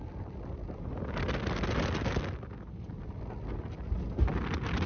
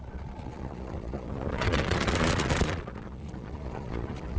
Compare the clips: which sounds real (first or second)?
first